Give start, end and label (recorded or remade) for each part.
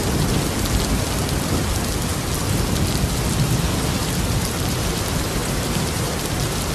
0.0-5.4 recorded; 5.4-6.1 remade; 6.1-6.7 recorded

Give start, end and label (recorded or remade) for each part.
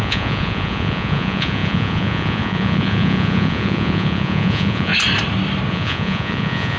0.0-4.9 remade; 4.9-5.7 recorded; 5.7-6.8 remade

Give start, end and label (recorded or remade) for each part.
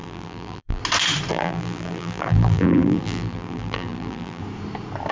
0.0-0.8 remade; 0.8-1.3 recorded; 1.3-4.4 remade; 4.4-5.1 recorded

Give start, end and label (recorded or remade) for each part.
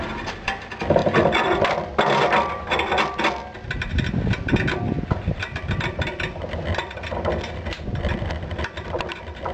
0.0-1.0 recorded; 1.0-1.9 remade; 1.9-9.5 recorded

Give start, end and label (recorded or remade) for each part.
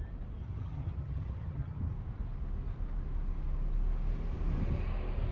0.0-0.4 recorded; 0.4-1.8 remade; 1.8-5.3 recorded